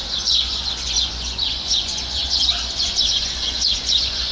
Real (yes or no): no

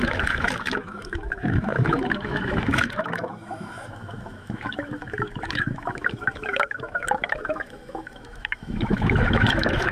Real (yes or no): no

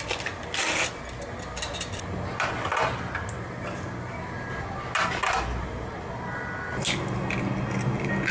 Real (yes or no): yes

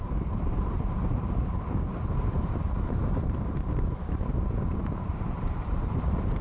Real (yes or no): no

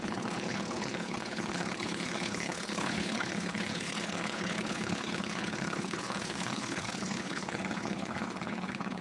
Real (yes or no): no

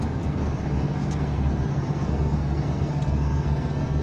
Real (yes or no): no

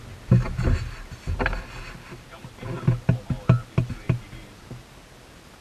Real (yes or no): yes